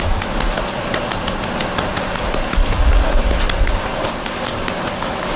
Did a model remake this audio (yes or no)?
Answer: no